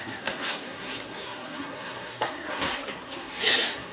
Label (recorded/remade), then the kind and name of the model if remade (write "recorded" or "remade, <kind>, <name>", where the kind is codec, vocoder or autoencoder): remade, codec, SNAC